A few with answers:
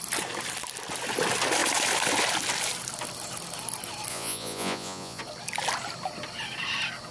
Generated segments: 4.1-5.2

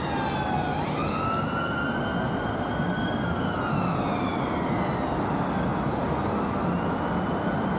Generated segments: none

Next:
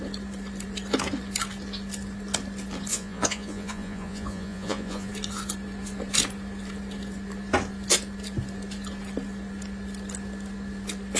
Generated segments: 2.9-5.1